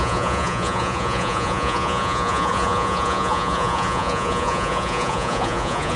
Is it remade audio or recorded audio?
remade